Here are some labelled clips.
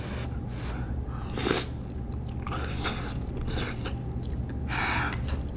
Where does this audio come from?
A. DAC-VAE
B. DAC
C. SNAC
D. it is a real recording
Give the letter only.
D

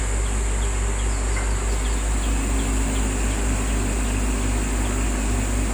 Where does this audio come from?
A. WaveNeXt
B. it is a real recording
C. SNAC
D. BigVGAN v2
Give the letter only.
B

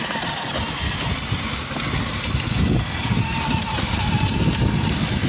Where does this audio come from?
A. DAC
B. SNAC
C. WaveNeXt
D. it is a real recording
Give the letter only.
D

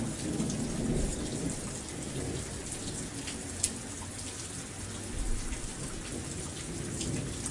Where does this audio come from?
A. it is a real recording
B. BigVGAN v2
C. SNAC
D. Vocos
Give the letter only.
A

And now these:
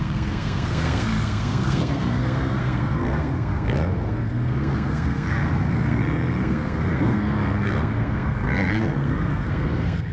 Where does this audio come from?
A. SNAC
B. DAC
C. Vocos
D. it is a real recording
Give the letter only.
A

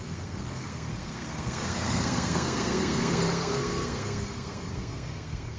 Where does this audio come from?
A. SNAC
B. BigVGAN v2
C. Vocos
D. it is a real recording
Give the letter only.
A